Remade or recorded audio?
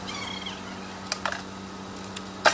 recorded